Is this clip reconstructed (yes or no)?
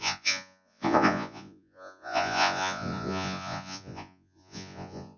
yes